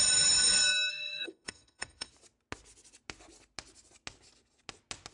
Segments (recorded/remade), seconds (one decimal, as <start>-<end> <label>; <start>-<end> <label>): 0.0-0.9 recorded; 0.9-2.1 remade; 2.1-5.1 recorded